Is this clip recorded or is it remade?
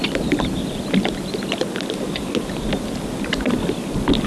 recorded